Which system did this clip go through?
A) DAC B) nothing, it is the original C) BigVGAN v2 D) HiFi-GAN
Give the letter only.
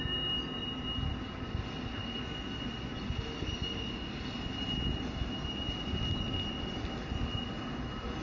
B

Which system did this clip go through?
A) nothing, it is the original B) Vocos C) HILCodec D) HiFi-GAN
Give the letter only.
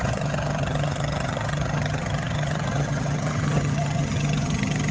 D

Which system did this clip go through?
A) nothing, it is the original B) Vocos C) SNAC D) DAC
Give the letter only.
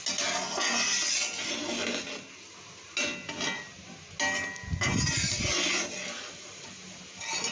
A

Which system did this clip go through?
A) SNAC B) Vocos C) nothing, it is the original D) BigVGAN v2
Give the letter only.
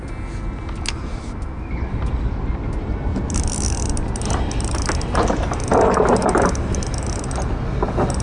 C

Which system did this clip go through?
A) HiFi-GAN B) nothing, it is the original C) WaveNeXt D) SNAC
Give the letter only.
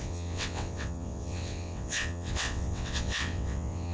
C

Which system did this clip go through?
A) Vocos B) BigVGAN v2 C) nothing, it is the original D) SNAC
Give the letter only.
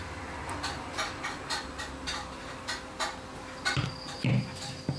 C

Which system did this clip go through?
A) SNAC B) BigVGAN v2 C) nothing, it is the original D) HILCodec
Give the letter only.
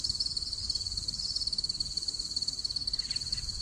C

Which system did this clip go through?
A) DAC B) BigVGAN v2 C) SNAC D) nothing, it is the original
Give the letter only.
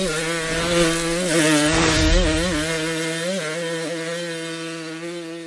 D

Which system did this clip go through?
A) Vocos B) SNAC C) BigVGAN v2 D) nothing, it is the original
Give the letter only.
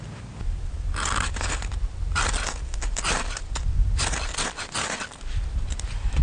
D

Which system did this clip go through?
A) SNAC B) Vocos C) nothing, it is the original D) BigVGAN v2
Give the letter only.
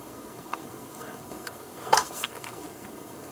A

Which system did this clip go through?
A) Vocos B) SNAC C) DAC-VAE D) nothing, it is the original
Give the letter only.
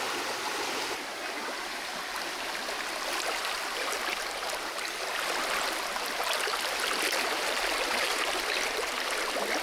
D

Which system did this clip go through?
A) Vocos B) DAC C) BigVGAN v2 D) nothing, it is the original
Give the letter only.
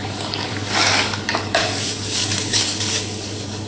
B